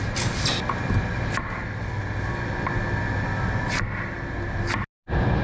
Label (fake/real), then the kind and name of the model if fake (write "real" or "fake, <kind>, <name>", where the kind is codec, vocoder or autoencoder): real